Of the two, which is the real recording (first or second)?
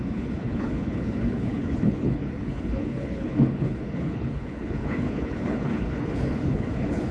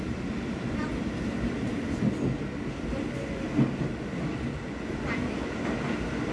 second